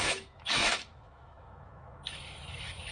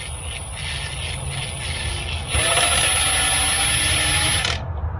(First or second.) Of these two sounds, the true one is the second